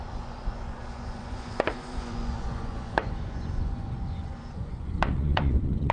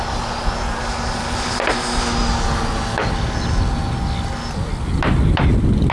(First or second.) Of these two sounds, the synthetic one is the first